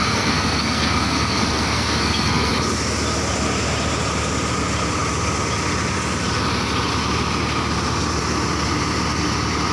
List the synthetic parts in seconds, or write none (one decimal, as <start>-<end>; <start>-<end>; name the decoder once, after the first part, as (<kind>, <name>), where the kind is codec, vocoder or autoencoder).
0.0-2.5 (codec, SNAC)

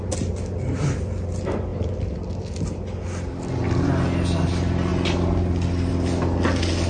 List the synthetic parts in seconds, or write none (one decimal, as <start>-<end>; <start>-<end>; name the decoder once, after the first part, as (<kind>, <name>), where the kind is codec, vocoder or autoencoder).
none

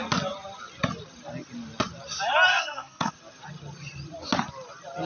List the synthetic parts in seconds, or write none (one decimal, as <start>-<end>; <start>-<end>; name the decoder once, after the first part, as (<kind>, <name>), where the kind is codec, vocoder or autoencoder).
2.5-3.1 (codec, SNAC)

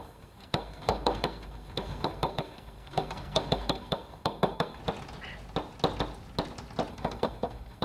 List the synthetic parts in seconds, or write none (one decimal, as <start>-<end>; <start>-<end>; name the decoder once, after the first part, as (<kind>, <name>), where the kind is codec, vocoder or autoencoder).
0.0-4.8 (codec, SNAC); 6.9-7.8

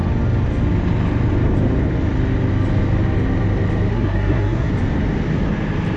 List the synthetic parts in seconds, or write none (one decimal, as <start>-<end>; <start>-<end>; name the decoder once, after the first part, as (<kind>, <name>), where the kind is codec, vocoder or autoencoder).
3.9-4.7 (codec, SNAC)

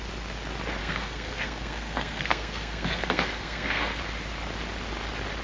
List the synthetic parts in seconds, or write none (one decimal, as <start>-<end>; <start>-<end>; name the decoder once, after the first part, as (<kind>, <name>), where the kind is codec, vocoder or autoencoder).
0.8-4.0 (codec, SNAC)

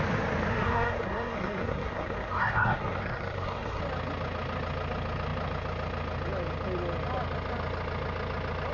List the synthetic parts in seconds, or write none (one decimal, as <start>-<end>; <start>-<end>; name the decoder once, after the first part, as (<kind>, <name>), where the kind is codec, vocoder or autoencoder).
0.5-3.8 (codec, SNAC)